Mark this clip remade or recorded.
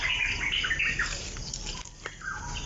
recorded